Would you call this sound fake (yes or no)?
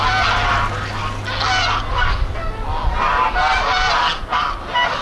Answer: no